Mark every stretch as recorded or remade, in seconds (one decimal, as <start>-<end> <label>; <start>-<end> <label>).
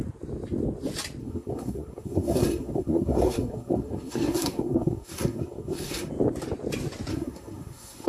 0.0-1.2 recorded; 1.2-6.1 remade; 6.1-7.1 recorded; 7.1-8.1 remade